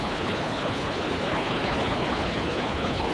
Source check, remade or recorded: remade